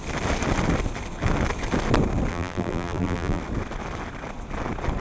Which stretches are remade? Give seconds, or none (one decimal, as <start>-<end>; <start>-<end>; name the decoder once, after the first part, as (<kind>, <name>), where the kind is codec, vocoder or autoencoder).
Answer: 2.3-3.4 (vocoder, BigVGAN v2)